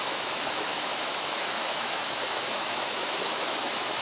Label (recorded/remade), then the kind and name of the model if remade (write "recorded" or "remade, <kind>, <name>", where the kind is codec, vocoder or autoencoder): remade, autoencoder, DAC-VAE